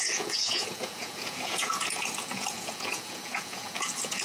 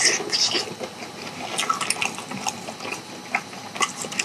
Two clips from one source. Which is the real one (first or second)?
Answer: second